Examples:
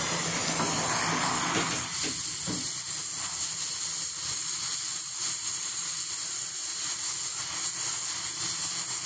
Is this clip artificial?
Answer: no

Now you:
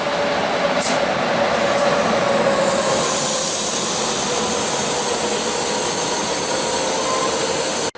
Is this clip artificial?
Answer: no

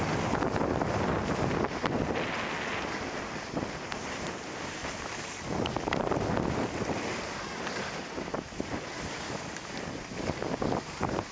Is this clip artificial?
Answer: no